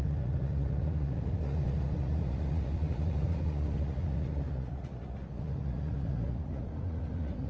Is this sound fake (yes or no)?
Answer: yes